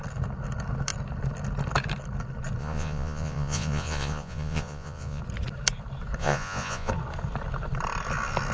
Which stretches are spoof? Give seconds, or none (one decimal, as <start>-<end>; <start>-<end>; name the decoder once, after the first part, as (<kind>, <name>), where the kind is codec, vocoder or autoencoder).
2.6-5.2 (vocoder, Vocos); 6.2-6.9